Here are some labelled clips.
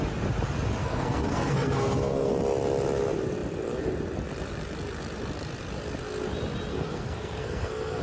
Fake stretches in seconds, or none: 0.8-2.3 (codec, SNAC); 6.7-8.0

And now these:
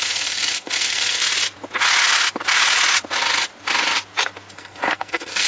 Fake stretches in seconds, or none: 0.0-1.2 (codec, SNAC); 4.5-5.5

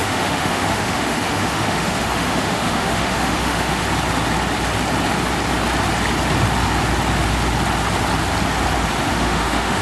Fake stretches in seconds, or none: 0.0-3.8 (autoencoder, DAC-VAE); 9.1-9.8

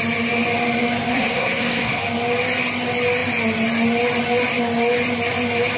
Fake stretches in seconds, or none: 1.1-2.0 (codec, SNAC)

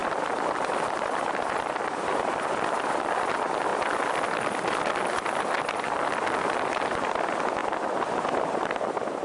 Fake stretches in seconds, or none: 0.0-3.3 (vocoder, BigVGAN v2)